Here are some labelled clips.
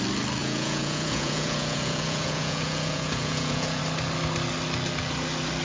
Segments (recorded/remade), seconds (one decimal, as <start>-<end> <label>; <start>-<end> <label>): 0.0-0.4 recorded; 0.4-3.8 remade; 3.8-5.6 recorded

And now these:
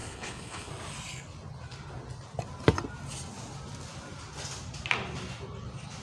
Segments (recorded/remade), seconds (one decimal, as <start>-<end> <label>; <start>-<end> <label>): 0.0-0.7 remade; 0.7-6.0 recorded

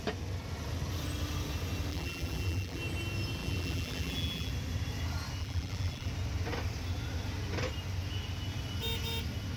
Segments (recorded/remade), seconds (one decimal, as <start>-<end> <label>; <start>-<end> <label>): 0.0-1.9 recorded; 1.9-2.8 remade; 2.8-3.4 recorded; 3.4-4.5 remade; 4.5-5.4 recorded; 5.4-6.1 remade; 6.1-9.6 recorded